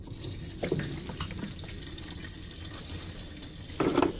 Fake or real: real